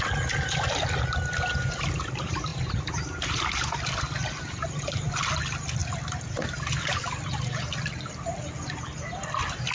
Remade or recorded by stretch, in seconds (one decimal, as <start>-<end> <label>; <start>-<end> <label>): 0.0-9.7 recorded